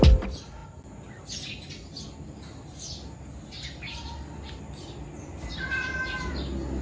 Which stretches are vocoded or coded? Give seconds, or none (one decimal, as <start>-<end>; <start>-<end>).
none